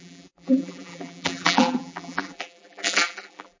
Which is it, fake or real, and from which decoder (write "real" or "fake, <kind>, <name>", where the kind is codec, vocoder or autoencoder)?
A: fake, vocoder, BigVGAN v2